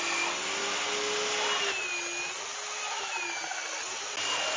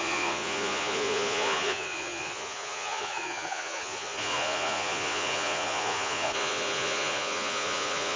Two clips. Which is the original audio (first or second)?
first